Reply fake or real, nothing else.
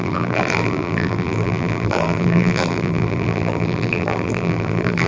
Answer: fake